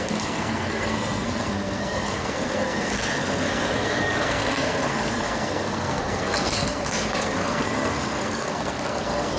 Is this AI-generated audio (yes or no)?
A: yes